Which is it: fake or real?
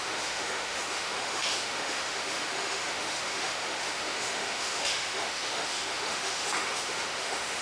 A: fake